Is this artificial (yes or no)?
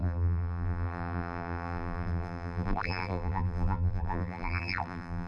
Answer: yes